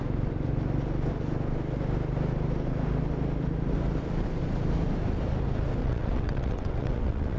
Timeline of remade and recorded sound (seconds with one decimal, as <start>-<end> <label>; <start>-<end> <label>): 0.0-5.8 recorded; 5.8-7.4 remade